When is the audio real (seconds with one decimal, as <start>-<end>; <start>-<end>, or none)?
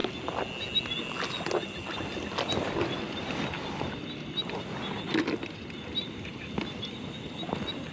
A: 0.0-7.9